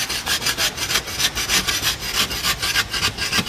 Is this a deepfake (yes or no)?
no